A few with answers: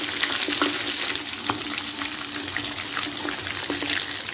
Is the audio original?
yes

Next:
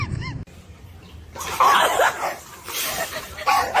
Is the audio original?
no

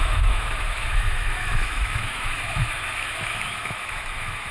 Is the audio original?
no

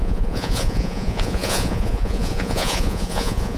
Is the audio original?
no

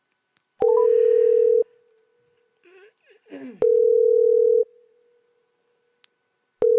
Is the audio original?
yes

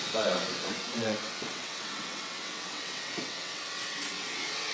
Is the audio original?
no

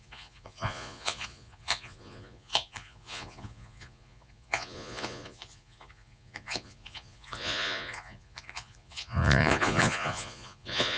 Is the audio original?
no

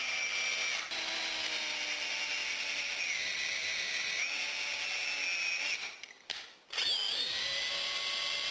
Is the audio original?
yes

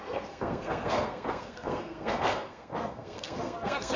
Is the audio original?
no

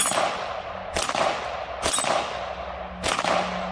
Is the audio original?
yes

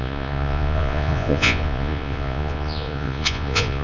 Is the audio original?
no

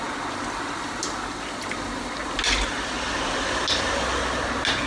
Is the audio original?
yes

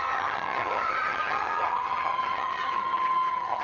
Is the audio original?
no